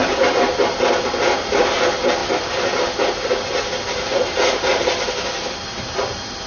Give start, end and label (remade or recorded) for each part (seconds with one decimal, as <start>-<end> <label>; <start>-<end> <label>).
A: 0.0-0.8 remade; 0.8-2.2 recorded; 2.2-5.8 remade; 5.8-6.5 recorded